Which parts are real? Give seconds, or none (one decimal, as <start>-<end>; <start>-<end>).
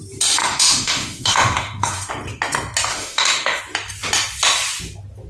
0.0-0.4; 2.1-2.9; 3.6-5.3